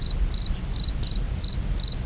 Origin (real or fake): fake